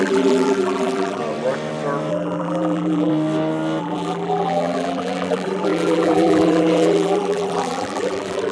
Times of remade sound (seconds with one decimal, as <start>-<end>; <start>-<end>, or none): 0.0-1.2; 2.1-3.1; 3.8-8.5